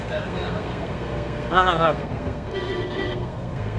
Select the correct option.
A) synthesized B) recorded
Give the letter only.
A